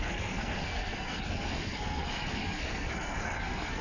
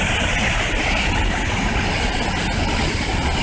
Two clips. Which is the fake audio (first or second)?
first